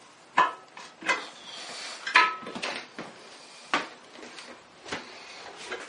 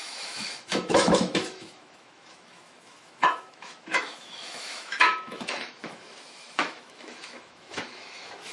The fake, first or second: second